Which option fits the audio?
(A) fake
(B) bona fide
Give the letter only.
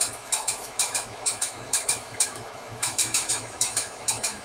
A